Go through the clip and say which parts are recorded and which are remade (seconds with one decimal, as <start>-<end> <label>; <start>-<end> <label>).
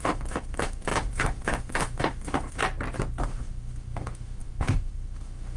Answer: 0.0-2.6 remade; 2.6-3.2 recorded; 3.2-5.6 remade